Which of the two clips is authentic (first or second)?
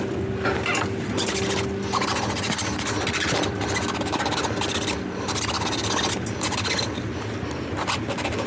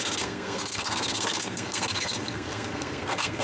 first